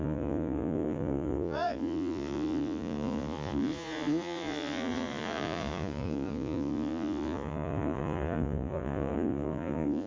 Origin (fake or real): fake